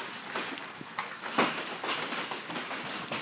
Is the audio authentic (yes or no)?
yes